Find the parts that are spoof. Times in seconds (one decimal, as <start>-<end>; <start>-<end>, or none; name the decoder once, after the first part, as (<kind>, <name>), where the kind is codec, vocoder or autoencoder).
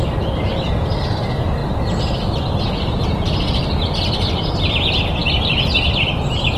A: none